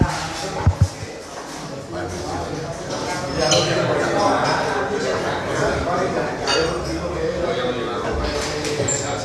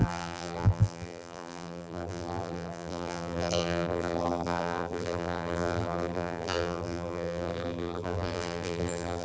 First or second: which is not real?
second